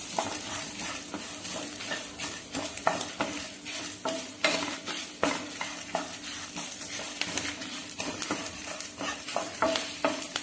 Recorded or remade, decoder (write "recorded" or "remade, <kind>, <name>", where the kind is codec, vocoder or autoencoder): remade, vocoder, BigVGAN v2